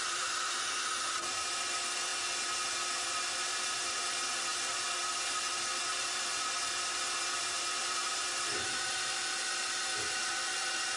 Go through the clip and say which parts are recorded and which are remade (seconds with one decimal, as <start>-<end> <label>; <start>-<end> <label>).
0.0-2.1 remade; 2.1-2.7 recorded; 2.7-11.0 remade